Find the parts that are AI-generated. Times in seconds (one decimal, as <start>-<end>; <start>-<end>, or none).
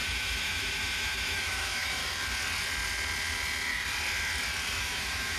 0.0-2.0; 4.8-5.4